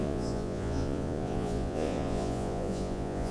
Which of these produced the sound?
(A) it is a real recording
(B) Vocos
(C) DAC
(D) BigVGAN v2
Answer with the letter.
B